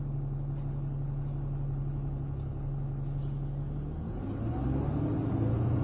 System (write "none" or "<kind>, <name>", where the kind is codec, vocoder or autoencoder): none